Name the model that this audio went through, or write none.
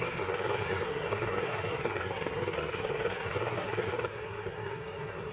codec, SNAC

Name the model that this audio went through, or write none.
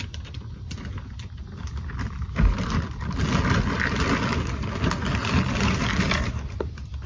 none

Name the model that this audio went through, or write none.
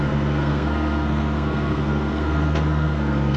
codec, SNAC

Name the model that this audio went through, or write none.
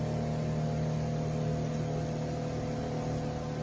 none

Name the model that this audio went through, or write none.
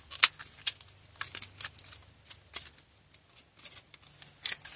none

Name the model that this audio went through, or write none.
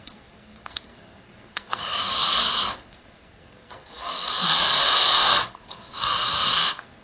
codec, SNAC